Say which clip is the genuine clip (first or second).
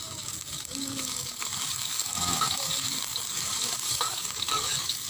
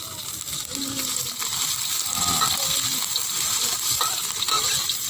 second